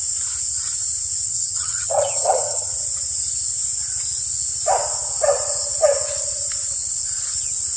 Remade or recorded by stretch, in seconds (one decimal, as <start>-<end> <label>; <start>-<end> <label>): 0.0-1.3 recorded; 1.3-2.7 remade; 2.7-7.8 recorded